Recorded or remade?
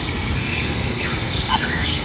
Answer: remade